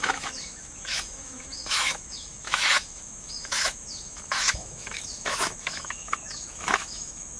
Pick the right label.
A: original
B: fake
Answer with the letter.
B